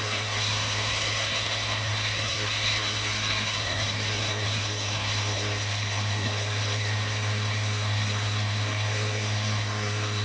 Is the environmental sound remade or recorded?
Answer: remade